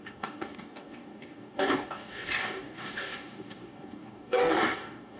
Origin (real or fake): fake